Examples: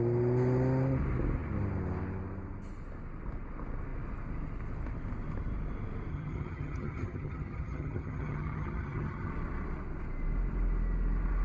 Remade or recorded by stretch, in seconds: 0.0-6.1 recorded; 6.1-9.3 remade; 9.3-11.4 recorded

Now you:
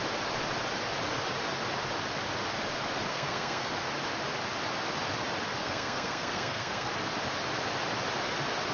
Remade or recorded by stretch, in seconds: 0.0-3.1 recorded; 3.1-3.7 remade; 3.7-5.5 recorded; 5.5-6.9 remade; 6.9-8.7 recorded

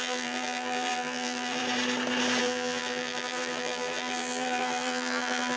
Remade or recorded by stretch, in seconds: 0.0-1.6 remade; 1.6-2.4 recorded; 2.4-5.6 remade

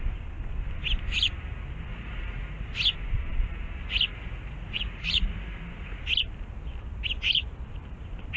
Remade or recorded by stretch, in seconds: 0.0-1.9 recorded; 1.9-2.7 remade; 2.7-4.1 recorded; 4.1-6.0 remade; 6.0-8.4 recorded